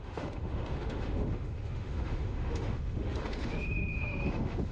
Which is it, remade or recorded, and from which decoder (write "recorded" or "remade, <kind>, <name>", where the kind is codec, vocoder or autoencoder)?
remade, autoencoder, DAC-VAE